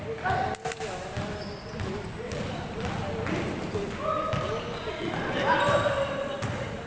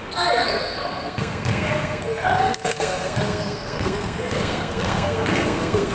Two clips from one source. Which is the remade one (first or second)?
second